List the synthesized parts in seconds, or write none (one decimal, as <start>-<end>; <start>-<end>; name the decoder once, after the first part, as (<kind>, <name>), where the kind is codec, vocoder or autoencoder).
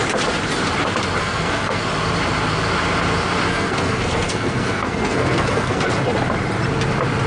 1.2-1.8 (codec, SNAC); 3.5-5.9